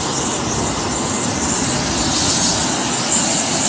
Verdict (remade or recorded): recorded